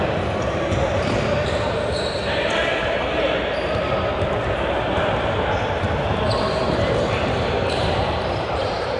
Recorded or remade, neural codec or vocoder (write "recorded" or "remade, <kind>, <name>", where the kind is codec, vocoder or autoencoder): remade, vocoder, BigVGAN v2